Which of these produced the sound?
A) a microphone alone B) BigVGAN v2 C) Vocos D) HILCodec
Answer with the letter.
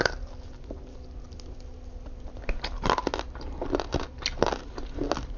A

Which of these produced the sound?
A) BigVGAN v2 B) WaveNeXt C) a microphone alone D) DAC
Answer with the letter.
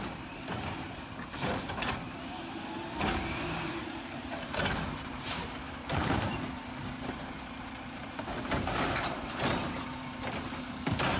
A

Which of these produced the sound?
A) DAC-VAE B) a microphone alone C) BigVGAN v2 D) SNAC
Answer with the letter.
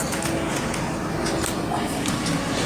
B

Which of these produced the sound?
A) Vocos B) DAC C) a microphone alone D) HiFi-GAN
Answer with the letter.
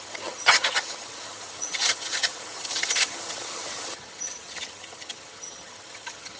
D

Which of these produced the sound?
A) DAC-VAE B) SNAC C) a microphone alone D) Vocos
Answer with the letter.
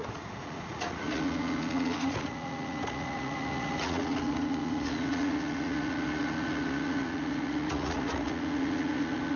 D